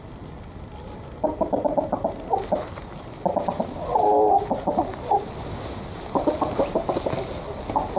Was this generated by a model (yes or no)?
no